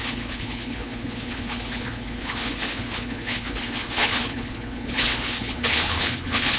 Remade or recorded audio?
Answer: remade